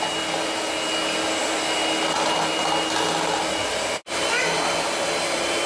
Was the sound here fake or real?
real